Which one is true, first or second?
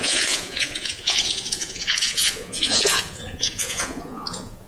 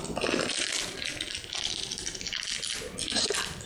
second